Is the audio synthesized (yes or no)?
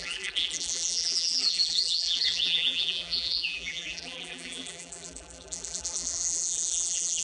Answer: yes